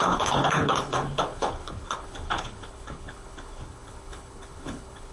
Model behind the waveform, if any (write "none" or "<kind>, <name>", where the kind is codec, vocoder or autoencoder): codec, HILCodec